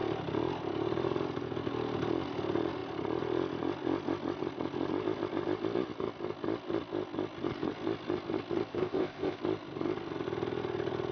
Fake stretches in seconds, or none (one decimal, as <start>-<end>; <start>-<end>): 8.7-9.4